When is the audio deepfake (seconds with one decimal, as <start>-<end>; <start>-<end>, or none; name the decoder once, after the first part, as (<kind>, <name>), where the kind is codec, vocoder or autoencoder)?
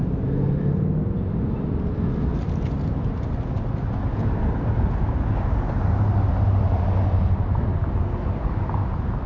none